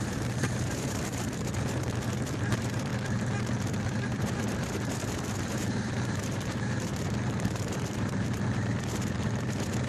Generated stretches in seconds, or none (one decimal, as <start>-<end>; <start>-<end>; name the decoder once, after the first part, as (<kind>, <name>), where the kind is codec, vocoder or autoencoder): 0.0-2.9 (vocoder, BigVGAN v2); 3.7-9.9

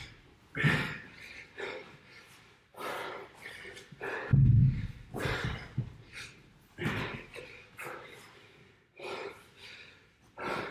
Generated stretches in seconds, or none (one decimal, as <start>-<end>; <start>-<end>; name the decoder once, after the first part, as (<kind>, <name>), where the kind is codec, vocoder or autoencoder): none

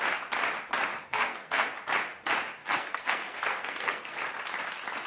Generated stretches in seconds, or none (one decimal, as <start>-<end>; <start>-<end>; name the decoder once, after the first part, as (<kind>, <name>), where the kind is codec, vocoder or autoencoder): 0.9-1.7 (codec, SNAC); 2.6-4.2

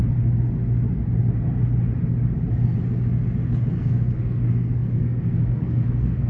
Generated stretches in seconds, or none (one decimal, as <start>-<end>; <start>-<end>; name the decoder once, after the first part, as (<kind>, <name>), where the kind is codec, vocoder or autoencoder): 3.7-6.3 (codec, SNAC)

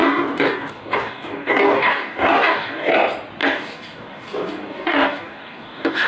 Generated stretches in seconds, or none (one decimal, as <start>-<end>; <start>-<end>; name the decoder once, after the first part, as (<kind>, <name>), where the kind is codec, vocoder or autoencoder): 0.0-2.9 (codec, DAC); 3.4-6.1

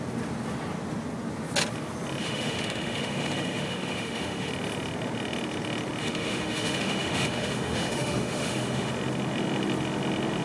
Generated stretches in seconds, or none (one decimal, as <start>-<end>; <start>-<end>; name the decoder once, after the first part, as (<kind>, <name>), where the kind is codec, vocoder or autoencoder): 2.2-4.5 (autoencoder, DAC-VAE); 6.0-8.9

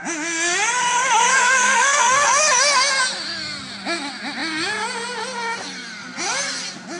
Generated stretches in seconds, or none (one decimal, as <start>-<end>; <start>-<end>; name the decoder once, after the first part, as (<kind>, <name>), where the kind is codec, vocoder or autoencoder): 1.3-2.4 (codec, SNAC)